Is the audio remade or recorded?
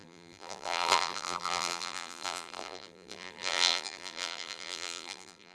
remade